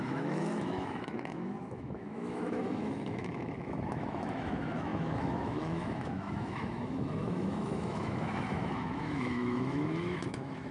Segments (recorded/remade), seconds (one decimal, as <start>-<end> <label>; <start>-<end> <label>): 0.0-10.7 remade